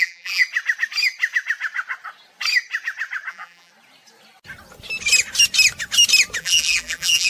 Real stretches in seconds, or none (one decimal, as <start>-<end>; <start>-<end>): 0.4-3.3; 3.7-6.4